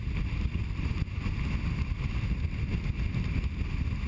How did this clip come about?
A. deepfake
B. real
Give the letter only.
B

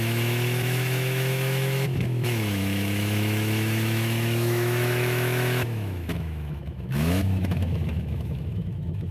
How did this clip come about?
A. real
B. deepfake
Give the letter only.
B